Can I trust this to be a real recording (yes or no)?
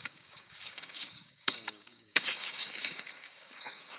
no